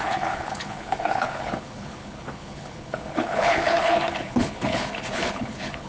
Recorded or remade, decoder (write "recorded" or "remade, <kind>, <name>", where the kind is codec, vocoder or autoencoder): remade, codec, HILCodec